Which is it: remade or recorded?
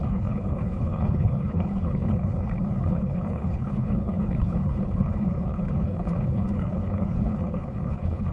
remade